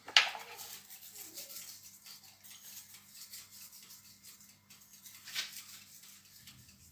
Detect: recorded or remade recorded